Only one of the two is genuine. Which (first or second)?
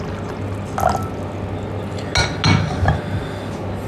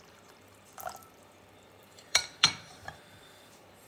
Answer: first